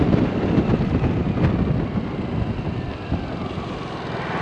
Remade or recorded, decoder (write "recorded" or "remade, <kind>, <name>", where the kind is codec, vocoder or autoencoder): recorded